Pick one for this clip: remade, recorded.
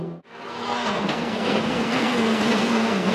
remade